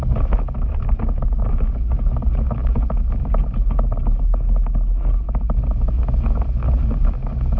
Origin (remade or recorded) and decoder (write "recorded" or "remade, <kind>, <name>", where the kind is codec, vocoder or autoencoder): recorded